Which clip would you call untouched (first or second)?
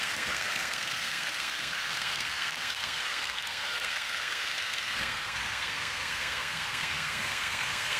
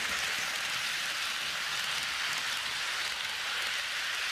second